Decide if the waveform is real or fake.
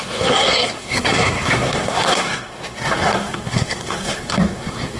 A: fake